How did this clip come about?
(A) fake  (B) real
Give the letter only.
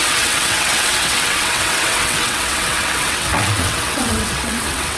A